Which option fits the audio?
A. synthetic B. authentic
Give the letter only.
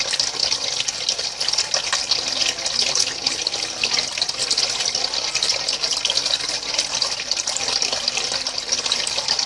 B